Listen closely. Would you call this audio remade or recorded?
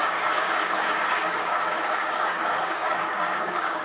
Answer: remade